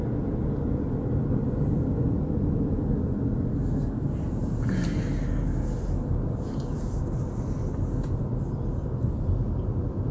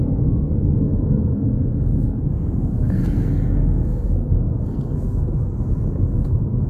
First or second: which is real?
first